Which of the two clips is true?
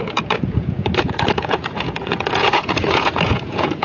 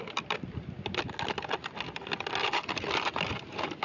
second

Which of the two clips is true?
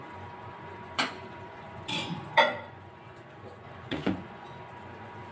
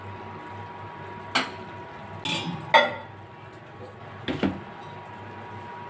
second